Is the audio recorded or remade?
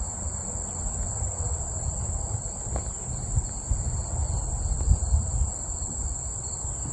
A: recorded